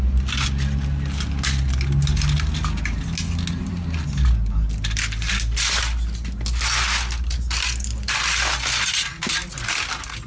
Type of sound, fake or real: real